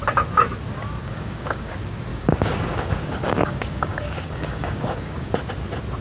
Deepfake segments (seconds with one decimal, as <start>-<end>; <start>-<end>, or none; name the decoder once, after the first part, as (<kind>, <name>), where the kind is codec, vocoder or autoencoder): 1.0-1.7 (codec, DAC); 2.1-5.3